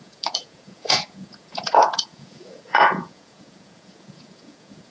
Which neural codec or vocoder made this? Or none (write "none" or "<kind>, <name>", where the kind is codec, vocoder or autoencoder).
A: vocoder, Vocos